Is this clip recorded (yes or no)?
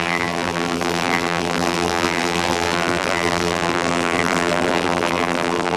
no